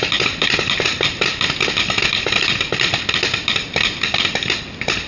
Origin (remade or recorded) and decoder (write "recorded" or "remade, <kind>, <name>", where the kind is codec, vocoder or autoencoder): recorded